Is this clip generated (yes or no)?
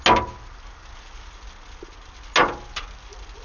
no